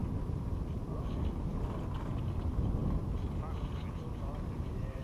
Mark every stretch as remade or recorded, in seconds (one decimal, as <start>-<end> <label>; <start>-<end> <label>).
0.0-5.0 recorded